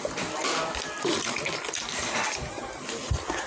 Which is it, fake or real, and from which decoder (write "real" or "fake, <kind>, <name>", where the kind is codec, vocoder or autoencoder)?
real